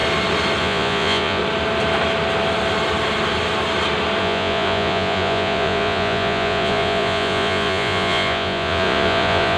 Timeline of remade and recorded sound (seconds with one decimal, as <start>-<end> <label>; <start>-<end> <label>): 0.0-0.6 recorded; 0.6-1.4 remade; 1.4-4.2 recorded; 4.2-9.6 remade